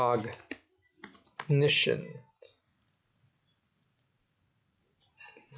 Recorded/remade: recorded